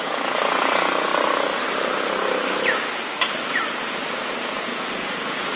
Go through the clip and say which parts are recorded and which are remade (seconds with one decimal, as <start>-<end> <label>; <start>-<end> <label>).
0.0-1.1 remade; 1.1-3.8 recorded; 3.8-5.6 remade